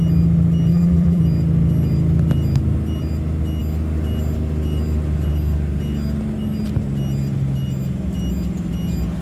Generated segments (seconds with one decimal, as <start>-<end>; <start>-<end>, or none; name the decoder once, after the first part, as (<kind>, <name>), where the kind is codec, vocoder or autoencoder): 0.7-1.2 (vocoder, BigVGAN v2)